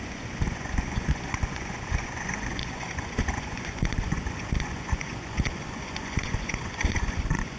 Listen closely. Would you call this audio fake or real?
fake